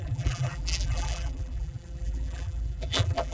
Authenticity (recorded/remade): remade